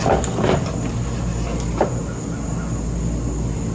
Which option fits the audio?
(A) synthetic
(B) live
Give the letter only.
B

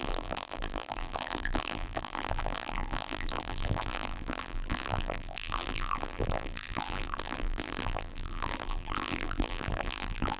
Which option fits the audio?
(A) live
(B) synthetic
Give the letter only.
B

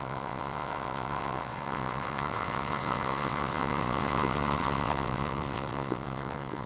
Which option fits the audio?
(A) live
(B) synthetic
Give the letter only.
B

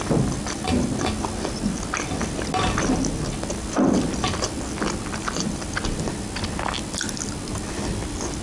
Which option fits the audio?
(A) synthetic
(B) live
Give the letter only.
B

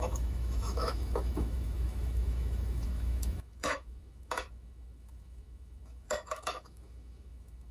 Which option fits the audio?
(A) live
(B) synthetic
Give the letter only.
B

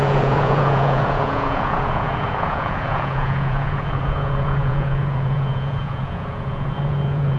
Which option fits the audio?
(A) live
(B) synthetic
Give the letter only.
B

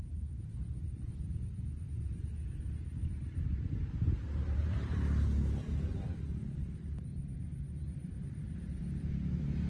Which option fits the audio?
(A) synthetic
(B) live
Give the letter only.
A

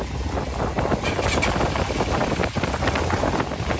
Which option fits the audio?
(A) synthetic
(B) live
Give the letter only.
B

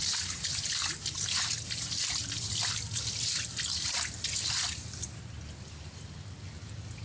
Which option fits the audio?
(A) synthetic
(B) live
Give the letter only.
B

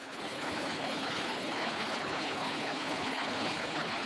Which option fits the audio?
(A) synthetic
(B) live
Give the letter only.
A